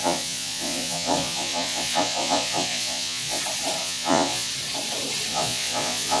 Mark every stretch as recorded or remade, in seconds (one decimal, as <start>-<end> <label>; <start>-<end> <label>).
0.0-3.4 remade; 3.4-3.8 recorded; 3.8-4.5 remade; 4.5-5.3 recorded; 5.3-6.2 remade